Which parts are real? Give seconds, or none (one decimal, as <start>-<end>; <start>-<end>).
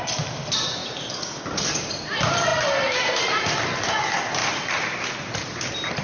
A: 0.0-0.8; 1.4-2.5; 3.1-4.4; 5.6-6.0